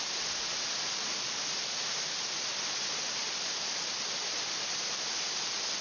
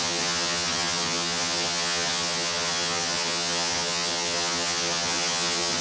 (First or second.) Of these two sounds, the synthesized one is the second